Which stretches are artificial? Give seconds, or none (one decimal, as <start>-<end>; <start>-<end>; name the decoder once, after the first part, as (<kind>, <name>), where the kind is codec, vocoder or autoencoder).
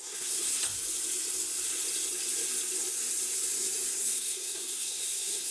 0.0-0.6 (codec, SNAC); 3.9-5.5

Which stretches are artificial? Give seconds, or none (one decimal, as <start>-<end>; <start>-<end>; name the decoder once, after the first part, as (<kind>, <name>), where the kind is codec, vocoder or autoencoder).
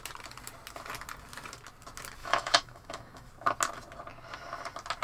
2.2-3.3 (autoencoder, DAC-VAE)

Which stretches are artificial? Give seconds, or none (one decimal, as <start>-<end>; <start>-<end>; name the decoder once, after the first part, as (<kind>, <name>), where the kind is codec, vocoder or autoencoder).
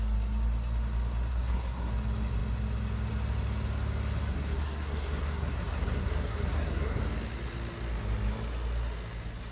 1.3-1.9 (codec, SNAC); 4.3-7.0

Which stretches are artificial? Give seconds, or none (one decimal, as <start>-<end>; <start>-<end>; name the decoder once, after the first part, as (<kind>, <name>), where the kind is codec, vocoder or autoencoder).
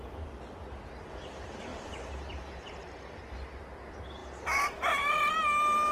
1.7-2.5 (vocoder, BigVGAN v2)